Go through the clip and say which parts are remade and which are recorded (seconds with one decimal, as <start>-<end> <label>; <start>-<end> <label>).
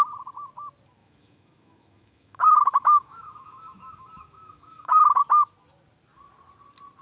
0.0-1.0 recorded; 1.0-5.2 remade; 5.2-7.0 recorded